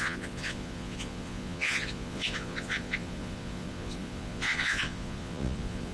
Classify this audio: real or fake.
fake